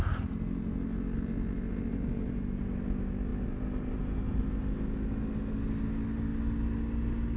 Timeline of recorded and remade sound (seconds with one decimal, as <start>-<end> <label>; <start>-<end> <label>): 0.0-7.4 recorded